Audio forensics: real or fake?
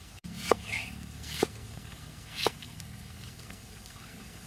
fake